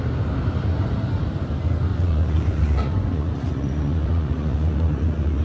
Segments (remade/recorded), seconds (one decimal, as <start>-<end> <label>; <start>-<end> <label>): 0.0-1.9 recorded; 1.9-5.4 remade

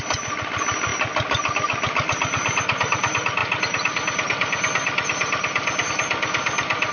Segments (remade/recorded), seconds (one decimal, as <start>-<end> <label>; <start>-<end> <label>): 0.0-6.9 recorded

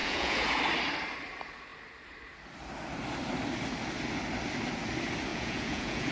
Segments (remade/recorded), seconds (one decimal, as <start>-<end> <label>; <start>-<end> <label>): 0.0-0.6 remade; 0.6-5.3 recorded; 5.3-6.1 remade